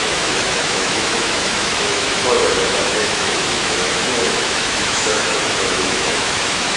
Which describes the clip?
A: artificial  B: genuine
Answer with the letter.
A